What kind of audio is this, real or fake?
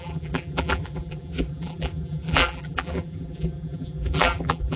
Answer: fake